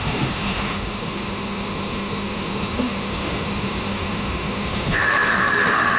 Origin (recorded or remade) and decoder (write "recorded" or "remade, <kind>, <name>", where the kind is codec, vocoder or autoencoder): remade, autoencoder, DAC-VAE